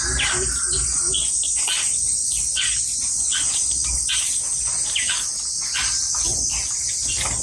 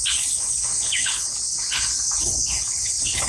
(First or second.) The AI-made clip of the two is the second